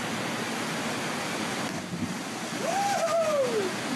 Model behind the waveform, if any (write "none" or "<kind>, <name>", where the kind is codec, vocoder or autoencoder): none